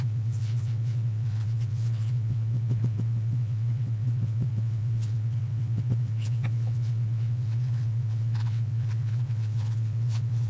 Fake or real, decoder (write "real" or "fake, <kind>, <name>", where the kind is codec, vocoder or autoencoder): fake, vocoder, WaveNeXt